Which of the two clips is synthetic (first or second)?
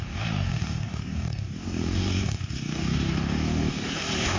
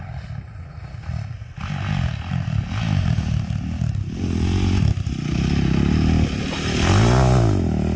first